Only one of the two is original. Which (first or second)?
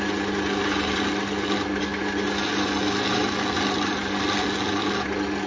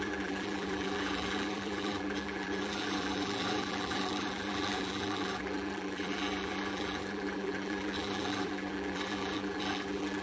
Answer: first